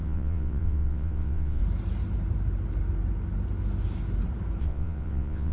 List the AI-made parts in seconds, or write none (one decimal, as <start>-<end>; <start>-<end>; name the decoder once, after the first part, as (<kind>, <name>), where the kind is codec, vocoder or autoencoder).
0.0-1.6 (vocoder, WaveNeXt); 4.6-5.5